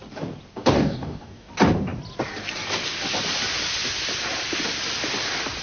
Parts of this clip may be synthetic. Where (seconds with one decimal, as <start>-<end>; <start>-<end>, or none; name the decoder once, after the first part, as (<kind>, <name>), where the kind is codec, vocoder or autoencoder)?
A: 0.5-1.5 (codec, DAC)